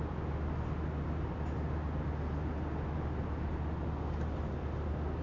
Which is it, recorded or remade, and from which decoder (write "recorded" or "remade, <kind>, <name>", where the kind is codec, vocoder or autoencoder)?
recorded